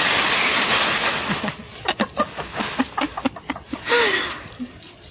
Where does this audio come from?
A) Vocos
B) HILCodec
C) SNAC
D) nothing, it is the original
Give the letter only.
D